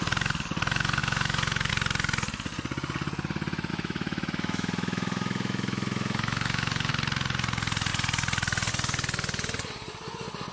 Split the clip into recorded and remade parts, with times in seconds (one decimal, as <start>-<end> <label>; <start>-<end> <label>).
0.0-1.0 recorded; 1.0-1.7 remade; 1.7-3.7 recorded; 3.7-6.9 remade; 6.9-10.5 recorded